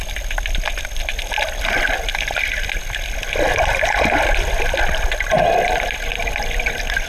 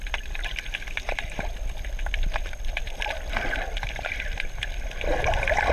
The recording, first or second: first